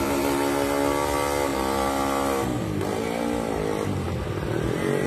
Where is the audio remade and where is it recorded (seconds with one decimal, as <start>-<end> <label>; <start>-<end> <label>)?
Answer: 0.0-5.1 recorded